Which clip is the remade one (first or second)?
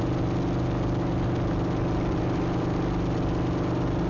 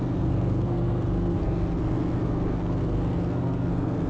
second